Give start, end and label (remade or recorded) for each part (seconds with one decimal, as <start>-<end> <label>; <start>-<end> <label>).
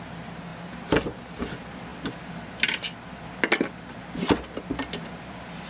0.0-5.7 recorded